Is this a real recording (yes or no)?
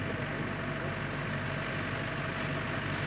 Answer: yes